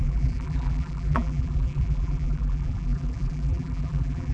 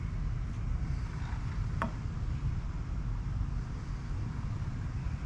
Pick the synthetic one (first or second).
first